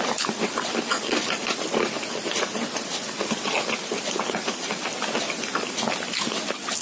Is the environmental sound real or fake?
real